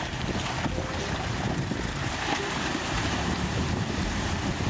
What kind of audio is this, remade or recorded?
remade